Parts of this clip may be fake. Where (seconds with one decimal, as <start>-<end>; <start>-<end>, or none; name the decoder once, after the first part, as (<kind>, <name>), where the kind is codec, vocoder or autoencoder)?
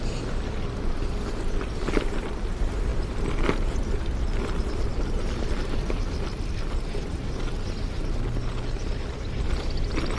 4.9-5.8 (vocoder, BigVGAN v2)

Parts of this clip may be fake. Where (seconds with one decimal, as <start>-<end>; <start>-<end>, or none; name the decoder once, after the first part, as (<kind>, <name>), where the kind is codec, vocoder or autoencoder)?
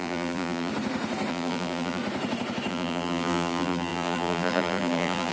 0.0-0.7 (vocoder, BigVGAN v2); 1.3-2.0; 2.7-5.3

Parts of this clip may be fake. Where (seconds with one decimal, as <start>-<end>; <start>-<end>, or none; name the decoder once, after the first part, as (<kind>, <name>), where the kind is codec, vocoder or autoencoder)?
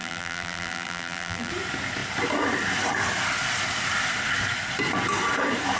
0.0-1.5 (vocoder, BigVGAN v2)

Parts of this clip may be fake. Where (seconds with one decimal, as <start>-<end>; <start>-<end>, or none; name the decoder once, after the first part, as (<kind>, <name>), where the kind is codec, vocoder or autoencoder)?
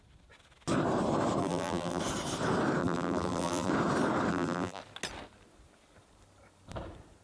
1.4-2.0 (vocoder, BigVGAN v2); 2.8-3.7; 4.3-4.8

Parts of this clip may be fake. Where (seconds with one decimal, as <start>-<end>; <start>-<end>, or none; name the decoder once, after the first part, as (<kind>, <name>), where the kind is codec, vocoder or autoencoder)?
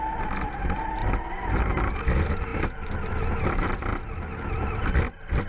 1.0-1.7 (vocoder, BigVGAN v2)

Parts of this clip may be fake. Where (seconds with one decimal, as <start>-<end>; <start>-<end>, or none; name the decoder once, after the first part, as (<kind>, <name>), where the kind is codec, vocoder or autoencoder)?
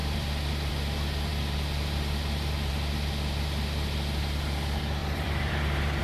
0.0-0.7 (vocoder, BigVGAN v2); 5.0-6.0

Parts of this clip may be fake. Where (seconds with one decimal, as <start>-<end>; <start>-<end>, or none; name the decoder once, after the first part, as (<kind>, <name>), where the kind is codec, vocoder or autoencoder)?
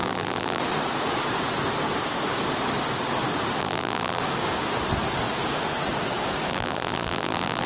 0.0-0.6 (vocoder, BigVGAN v2); 3.6-4.2; 6.5-7.7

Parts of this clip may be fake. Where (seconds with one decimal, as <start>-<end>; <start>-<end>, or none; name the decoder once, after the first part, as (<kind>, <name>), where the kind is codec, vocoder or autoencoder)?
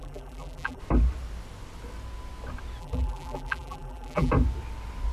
0.0-0.8 (vocoder, BigVGAN v2); 2.8-4.3